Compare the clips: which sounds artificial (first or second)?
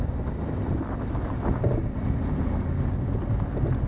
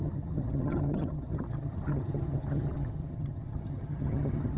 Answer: second